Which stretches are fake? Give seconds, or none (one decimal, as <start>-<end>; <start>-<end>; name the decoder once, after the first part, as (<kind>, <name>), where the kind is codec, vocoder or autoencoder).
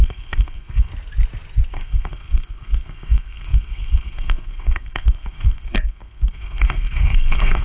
0.0-0.9 (codec, SNAC); 1.7-7.6